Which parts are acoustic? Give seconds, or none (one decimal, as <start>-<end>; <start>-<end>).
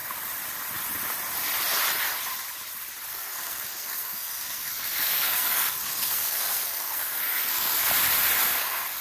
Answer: 0.0-3.1; 7.9-8.4